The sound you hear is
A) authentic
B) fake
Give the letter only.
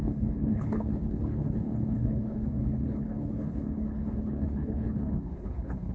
B